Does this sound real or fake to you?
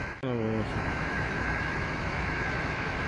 fake